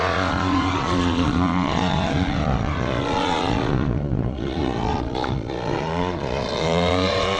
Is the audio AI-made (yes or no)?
yes